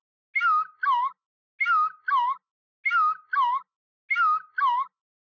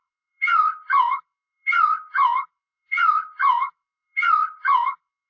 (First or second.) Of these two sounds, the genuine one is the first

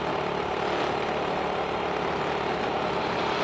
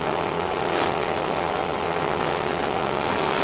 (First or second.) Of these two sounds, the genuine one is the first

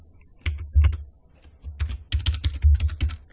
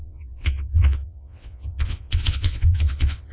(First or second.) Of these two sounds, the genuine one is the first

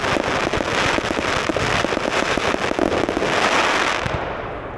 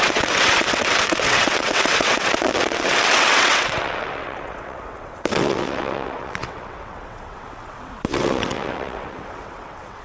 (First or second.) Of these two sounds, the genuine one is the first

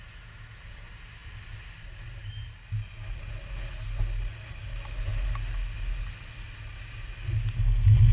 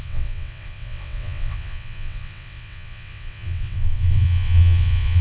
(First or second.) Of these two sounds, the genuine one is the first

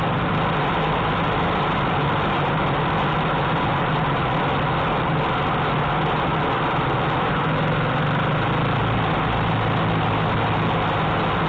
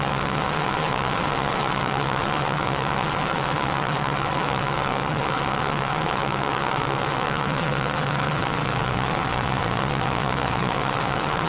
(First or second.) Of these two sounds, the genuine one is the first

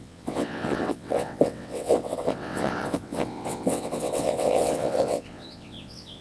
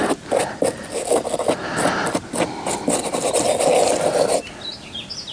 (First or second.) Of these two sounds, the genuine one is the second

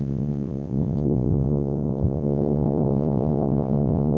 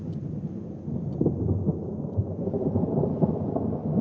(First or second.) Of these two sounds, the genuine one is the second